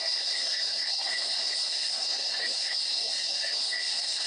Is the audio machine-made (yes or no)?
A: yes